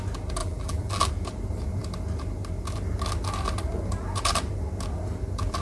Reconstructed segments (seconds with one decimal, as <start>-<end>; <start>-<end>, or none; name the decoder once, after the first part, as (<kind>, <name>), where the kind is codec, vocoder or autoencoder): 0.4-1.1 (vocoder, BigVGAN v2)